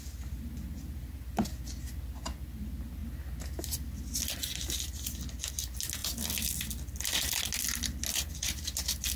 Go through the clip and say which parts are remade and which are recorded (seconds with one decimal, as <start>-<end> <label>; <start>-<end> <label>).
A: 0.0-9.2 recorded